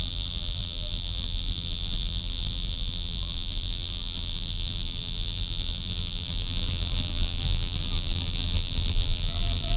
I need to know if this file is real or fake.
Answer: fake